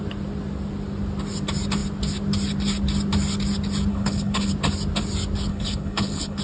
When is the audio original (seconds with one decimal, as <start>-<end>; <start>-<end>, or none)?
0.0-3.9; 4.5-5.5